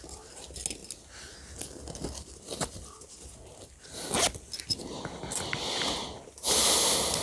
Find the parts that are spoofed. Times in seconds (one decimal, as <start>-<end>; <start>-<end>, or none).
none